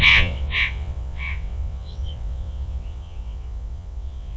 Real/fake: fake